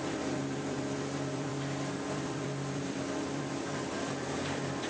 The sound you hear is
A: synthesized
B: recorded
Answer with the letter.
A